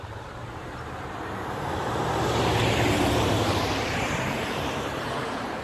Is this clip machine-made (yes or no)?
yes